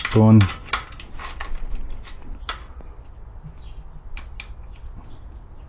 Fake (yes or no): no